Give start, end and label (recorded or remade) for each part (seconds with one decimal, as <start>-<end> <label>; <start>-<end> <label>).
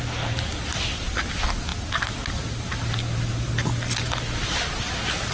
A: 0.0-5.3 recorded